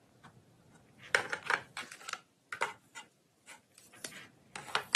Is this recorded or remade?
recorded